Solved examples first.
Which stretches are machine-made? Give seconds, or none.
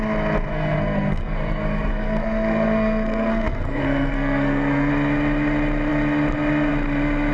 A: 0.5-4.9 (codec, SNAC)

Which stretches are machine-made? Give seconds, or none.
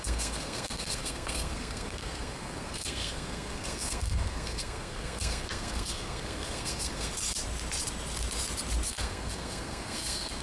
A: 0.0-7.1 (codec, SNAC); 8.9-10.4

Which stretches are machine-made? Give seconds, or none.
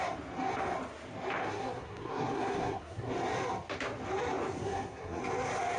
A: 1.4-3.1 (codec, SNAC); 4.6-5.2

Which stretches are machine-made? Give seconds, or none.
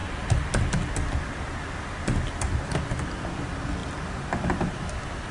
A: none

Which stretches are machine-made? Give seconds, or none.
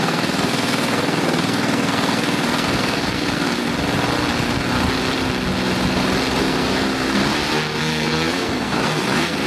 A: 0.0-3.7 (codec, SNAC); 6.4-7.2; 7.8-9.5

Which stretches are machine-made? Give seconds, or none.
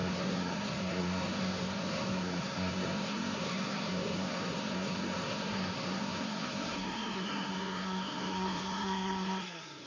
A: 0.0-9.9 (codec, SNAC)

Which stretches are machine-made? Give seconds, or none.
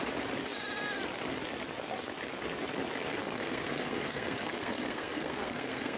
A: 3.2-6.0 (codec, SNAC)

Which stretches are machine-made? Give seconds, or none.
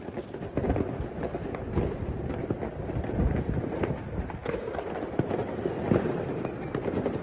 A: none